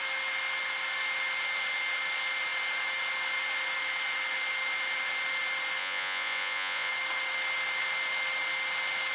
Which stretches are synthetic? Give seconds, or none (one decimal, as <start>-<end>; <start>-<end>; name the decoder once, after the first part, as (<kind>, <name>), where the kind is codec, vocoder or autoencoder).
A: 5.8-6.9 (vocoder, Vocos)

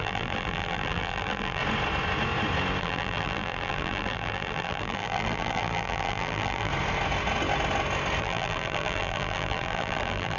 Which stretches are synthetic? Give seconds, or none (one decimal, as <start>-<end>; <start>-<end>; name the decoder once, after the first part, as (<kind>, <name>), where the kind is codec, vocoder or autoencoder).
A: 0.0-1.6 (vocoder, BigVGAN v2); 2.8-6.7; 8.2-10.4